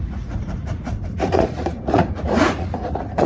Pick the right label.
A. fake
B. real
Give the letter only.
A